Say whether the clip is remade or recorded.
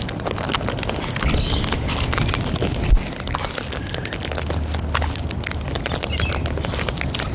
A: recorded